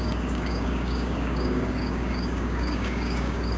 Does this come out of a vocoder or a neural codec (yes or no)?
yes